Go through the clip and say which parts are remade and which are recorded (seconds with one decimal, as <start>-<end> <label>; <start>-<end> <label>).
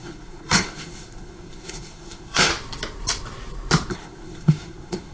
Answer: 0.0-2.5 remade; 2.5-3.9 recorded; 3.9-5.1 remade